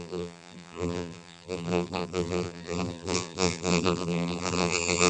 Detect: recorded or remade remade